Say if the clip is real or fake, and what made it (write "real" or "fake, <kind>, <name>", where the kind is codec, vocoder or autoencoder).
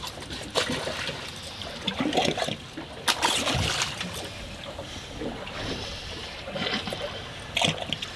real